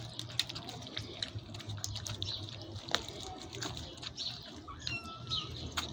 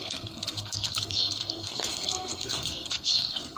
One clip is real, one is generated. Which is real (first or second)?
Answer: first